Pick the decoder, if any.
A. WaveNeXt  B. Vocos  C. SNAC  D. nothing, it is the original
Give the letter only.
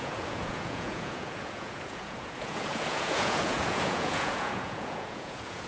B